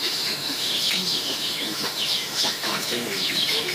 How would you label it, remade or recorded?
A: remade